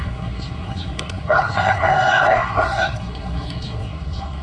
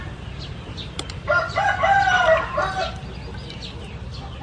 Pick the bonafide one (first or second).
second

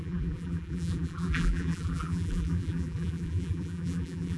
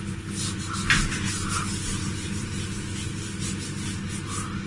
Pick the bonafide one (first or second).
second